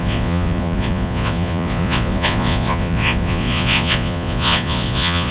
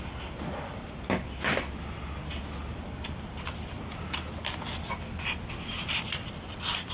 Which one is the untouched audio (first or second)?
second